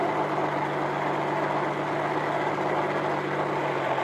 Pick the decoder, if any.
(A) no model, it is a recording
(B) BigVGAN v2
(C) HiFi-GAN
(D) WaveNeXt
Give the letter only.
A